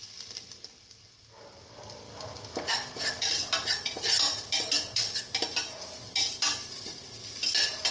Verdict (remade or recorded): recorded